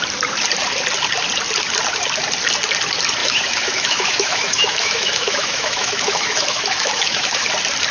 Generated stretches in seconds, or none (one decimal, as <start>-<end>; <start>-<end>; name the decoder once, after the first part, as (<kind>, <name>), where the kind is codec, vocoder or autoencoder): 3.2-7.5 (autoencoder, DAC-VAE)